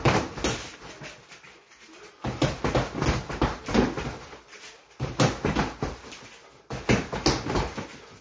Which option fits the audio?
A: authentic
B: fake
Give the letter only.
A